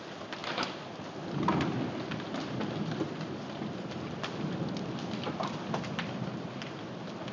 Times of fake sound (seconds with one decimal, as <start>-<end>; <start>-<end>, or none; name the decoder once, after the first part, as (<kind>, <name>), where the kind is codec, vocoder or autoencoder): none